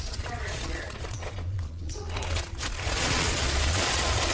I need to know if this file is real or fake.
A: fake